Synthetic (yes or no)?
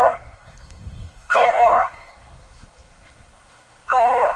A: yes